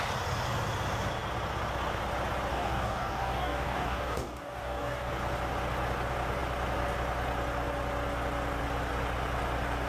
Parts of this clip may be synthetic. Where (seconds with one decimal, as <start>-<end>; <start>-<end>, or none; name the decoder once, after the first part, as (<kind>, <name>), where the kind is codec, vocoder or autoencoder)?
2.5-5.1 (codec, DAC)